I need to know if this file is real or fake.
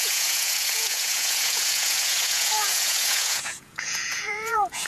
fake